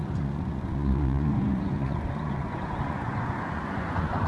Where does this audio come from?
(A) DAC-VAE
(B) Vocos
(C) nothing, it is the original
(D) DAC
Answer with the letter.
B